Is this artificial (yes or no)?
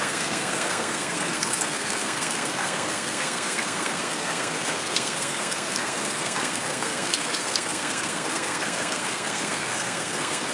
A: yes